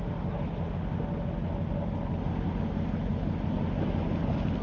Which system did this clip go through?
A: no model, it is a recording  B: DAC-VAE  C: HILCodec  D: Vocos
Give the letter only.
A